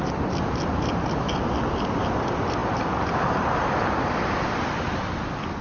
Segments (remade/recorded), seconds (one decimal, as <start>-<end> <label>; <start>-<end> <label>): 0.0-5.6 recorded